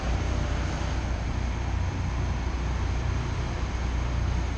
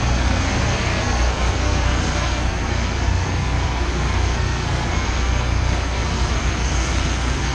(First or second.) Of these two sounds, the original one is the first